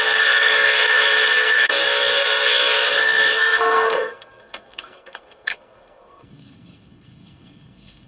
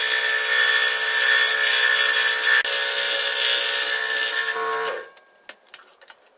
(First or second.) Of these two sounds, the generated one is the first